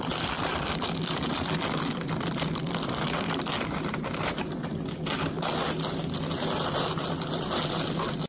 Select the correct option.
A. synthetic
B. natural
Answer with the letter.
B